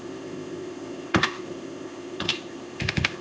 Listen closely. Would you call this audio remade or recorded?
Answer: remade